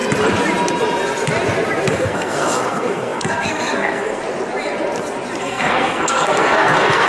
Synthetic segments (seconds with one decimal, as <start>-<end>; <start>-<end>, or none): 1.9-4.2; 5.4-7.1